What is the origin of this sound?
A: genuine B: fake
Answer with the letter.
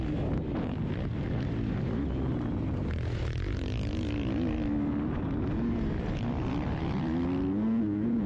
A